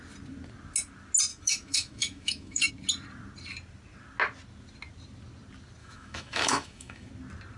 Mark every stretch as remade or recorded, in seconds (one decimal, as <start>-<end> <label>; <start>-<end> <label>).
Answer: 0.0-1.3 recorded; 1.3-2.7 remade; 2.7-5.8 recorded; 5.8-7.1 remade; 7.1-7.6 recorded